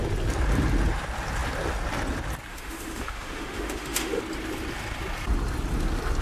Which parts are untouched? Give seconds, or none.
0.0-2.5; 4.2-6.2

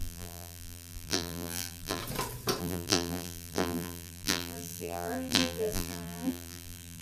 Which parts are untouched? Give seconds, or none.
2.0-2.6

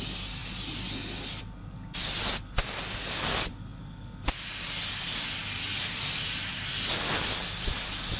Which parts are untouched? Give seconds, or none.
0.0-8.2

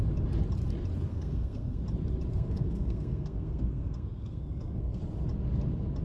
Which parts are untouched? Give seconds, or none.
0.0-1.1; 1.8-2.3; 5.0-6.0

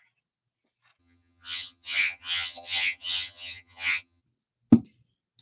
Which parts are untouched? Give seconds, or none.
0.0-1.0; 4.2-5.4